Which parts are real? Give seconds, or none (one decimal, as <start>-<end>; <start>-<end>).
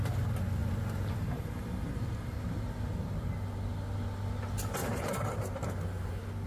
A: 0.0-0.6; 3.3-4.8; 5.7-6.5